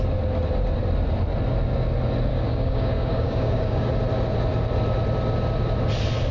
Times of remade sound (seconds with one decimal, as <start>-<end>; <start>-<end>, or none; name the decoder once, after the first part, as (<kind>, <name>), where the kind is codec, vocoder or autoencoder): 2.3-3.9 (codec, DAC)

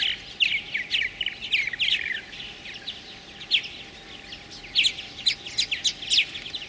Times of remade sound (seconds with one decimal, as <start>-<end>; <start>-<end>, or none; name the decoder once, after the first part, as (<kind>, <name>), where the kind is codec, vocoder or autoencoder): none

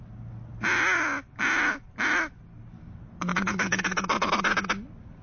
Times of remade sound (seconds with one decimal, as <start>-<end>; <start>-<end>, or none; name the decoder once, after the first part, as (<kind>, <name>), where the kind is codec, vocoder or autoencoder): 3.3-4.3 (codec, DAC)

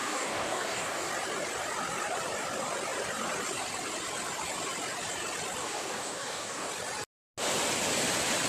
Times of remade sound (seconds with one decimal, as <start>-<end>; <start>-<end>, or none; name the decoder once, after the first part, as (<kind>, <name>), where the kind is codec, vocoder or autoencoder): 0.0-1.1 (codec, DAC); 5.6-6.7

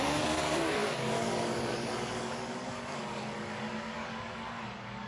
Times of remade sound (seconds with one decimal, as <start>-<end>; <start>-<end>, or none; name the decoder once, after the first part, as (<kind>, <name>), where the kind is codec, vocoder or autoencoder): 0.0-5.1 (codec, DAC)

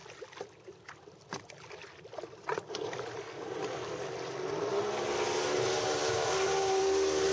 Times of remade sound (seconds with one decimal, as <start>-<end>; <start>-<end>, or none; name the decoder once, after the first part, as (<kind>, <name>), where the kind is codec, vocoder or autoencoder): none

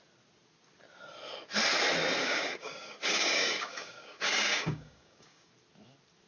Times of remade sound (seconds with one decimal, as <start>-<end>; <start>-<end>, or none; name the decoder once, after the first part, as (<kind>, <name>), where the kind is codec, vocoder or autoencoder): 2.2-5.5 (codec, DAC)

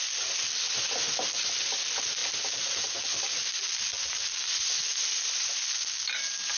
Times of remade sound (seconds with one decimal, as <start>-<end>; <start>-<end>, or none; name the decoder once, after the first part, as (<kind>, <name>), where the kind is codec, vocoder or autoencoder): none